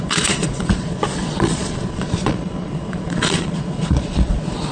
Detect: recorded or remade remade